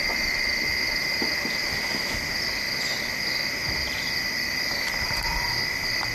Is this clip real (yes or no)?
no